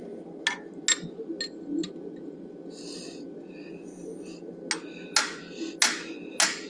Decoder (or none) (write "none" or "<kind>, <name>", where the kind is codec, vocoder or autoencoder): none